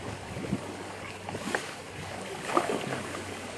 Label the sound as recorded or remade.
remade